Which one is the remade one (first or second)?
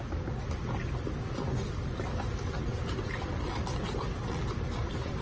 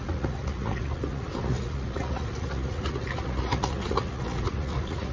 second